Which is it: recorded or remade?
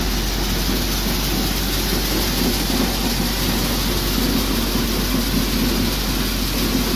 recorded